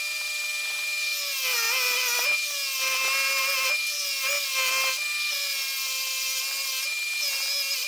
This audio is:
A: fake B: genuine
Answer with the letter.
B